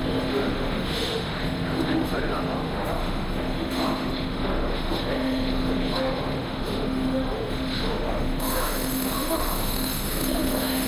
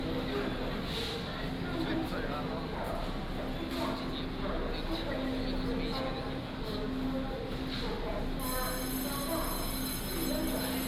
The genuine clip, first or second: second